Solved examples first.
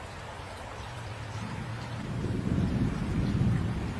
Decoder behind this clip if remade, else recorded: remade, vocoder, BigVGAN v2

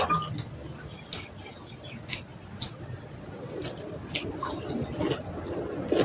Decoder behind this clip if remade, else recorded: recorded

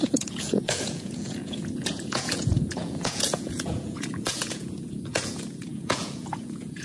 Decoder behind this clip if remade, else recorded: remade, vocoder, Vocos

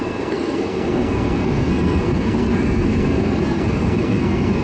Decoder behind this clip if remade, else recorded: remade, codec, SNAC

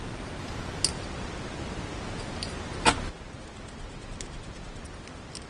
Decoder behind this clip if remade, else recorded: recorded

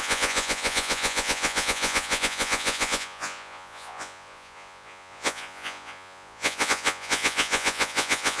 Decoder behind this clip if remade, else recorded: remade, vocoder, Vocos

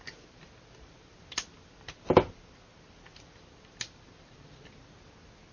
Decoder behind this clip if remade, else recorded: recorded